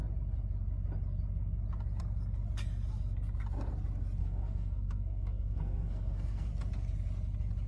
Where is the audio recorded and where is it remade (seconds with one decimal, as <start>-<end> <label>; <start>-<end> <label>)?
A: 0.0-4.2 recorded; 4.2-6.5 remade; 6.5-7.7 recorded